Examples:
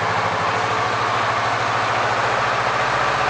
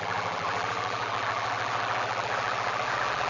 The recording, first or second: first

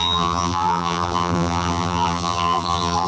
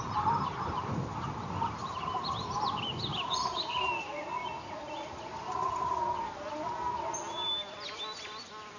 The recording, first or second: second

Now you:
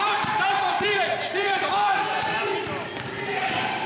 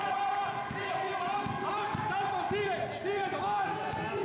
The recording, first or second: second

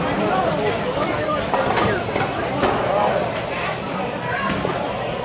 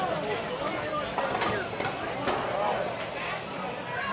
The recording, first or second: second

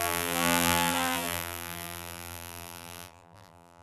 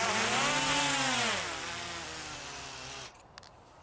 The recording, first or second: second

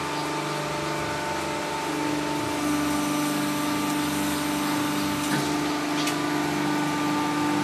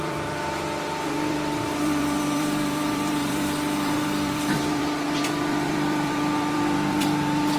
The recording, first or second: first